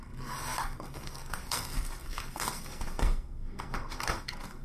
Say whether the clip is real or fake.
fake